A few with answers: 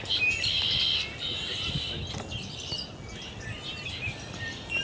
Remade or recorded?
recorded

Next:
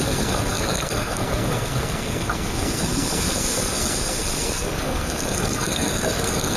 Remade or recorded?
remade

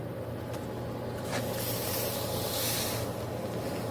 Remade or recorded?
recorded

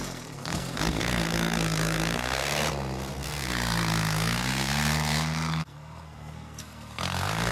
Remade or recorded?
remade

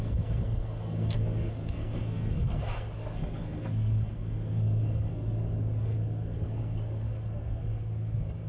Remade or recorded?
remade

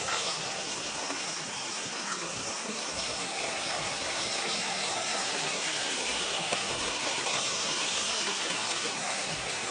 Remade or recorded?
remade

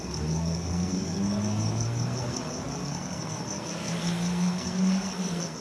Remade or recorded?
remade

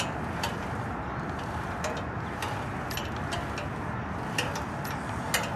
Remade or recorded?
recorded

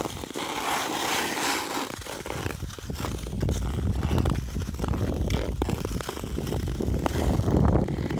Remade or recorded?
recorded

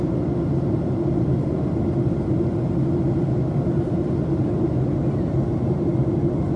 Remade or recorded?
recorded